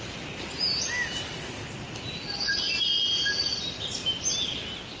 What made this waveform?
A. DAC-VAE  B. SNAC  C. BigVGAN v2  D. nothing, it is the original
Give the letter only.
D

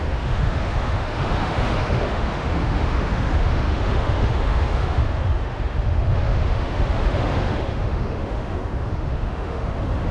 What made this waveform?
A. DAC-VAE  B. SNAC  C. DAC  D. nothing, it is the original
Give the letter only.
A